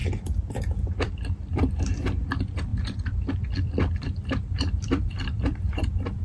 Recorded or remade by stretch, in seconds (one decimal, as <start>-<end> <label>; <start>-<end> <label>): 0.0-4.4 recorded; 4.4-5.8 remade; 5.8-6.2 recorded